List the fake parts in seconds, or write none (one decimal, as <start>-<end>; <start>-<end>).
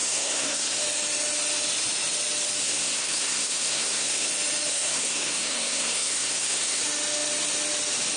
0.0-0.8; 2.6-4.3; 4.7-6.8